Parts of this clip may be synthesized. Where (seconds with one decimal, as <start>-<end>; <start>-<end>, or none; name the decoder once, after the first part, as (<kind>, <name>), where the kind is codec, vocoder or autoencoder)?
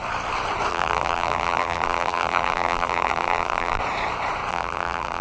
0.7-3.8 (vocoder, BigVGAN v2); 4.5-5.2